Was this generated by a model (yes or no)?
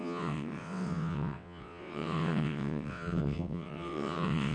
yes